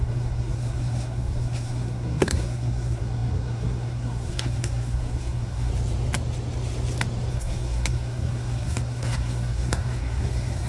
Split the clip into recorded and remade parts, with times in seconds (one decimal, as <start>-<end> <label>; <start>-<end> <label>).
0.0-5.7 remade; 5.7-7.3 recorded; 7.3-10.7 remade

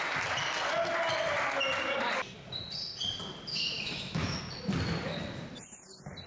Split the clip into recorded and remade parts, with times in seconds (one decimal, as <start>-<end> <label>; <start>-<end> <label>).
0.0-3.5 recorded; 3.5-4.4 remade; 4.4-6.3 recorded

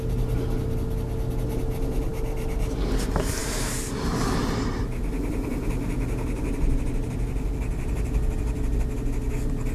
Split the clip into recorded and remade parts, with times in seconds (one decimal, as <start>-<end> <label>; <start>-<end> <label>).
0.0-9.7 recorded

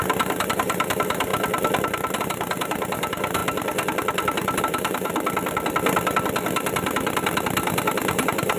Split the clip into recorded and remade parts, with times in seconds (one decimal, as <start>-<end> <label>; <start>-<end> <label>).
0.0-1.3 remade; 1.3-2.2 recorded; 2.2-3.4 remade; 3.4-4.6 recorded; 4.6-5.1 remade; 5.1-8.1 recorded; 8.1-8.6 remade

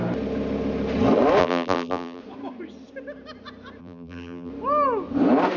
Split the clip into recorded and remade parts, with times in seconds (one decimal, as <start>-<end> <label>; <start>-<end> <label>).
0.0-1.4 recorded; 1.4-2.2 remade; 2.2-3.8 recorded; 3.8-4.5 remade; 4.5-5.6 recorded

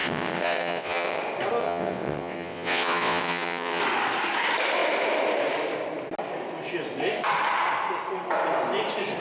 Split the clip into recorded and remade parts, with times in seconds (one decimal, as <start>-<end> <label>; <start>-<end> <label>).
0.0-1.2 remade; 1.2-1.6 recorded; 1.6-3.8 remade; 3.8-9.2 recorded

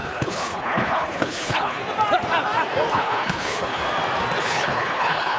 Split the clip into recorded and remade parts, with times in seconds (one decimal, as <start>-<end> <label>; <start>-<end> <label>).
0.0-1.8 remade; 1.8-2.9 recorded; 2.9-3.8 remade; 3.8-4.4 recorded; 4.4-5.4 remade